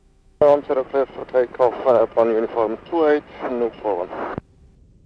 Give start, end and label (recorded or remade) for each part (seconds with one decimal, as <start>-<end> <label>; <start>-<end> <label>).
0.0-0.7 remade; 0.7-1.2 recorded; 1.2-2.0 remade; 2.0-5.1 recorded